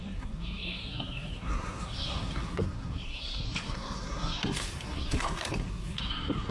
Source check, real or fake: fake